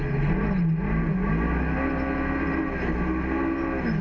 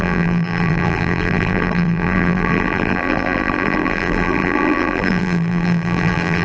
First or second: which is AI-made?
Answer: second